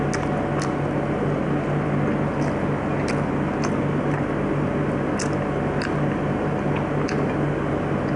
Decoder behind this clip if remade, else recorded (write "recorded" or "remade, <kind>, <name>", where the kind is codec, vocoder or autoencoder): recorded